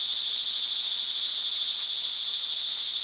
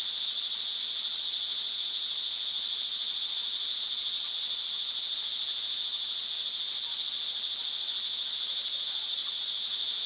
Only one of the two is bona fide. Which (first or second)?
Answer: first